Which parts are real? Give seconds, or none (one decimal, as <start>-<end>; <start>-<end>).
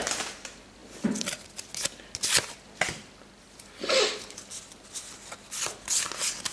0.0-6.5